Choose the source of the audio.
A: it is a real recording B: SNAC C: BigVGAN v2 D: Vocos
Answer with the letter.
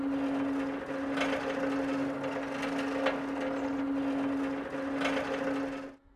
A